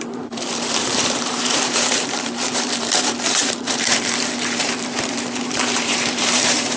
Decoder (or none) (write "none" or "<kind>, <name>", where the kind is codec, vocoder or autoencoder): vocoder, BigVGAN v2